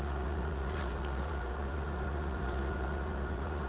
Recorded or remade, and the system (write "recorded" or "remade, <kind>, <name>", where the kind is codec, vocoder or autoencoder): remade, vocoder, Vocos